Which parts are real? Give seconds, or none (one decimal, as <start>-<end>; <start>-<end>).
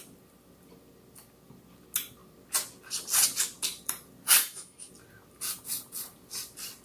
0.0-4.4; 4.9-6.8